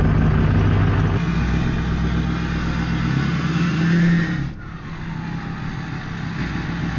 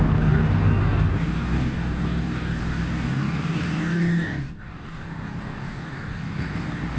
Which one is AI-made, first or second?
second